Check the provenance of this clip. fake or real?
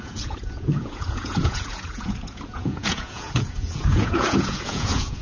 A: fake